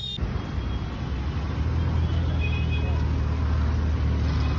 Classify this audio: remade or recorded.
recorded